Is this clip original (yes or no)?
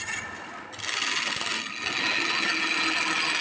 yes